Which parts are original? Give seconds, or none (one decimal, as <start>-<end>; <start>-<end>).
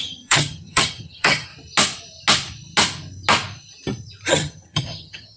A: 1.5-4.3